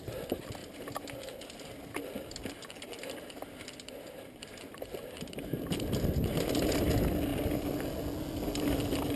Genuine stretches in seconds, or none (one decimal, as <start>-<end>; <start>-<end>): 0.0-9.2